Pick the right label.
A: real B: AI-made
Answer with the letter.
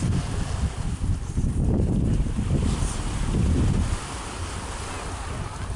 A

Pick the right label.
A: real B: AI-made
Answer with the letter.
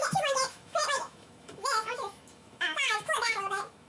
B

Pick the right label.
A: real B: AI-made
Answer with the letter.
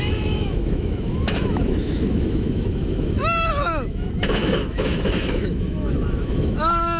B